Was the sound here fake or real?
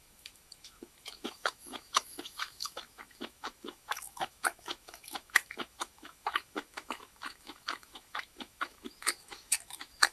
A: fake